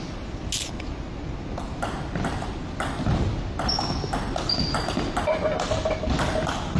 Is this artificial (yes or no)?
no